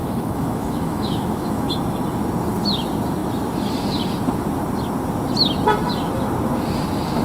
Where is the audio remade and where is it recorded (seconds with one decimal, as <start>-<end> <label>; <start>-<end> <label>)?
0.0-1.7 remade; 1.7-7.2 recorded